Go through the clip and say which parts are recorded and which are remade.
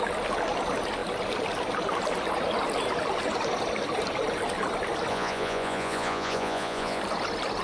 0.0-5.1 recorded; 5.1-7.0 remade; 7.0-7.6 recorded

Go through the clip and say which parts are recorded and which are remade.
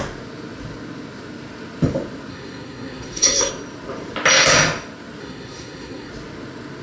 0.0-2.3 recorded; 2.3-3.5 remade; 3.5-5.2 recorded; 5.2-6.1 remade; 6.1-6.8 recorded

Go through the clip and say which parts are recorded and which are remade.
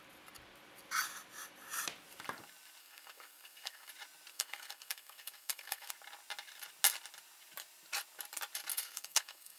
0.0-2.8 recorded; 2.8-3.9 remade; 3.9-4.3 recorded; 4.3-5.9 remade; 5.9-8.7 recorded; 8.7-9.6 remade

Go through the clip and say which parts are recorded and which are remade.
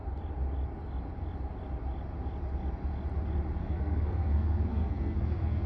0.0-3.6 recorded; 3.6-5.7 remade